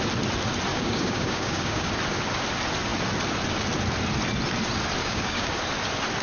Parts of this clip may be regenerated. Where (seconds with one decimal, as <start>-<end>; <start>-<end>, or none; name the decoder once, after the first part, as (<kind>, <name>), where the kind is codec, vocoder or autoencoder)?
0.7-1.9 (codec, DAC); 5.0-5.5